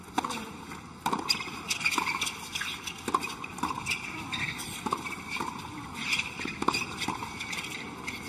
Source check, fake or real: real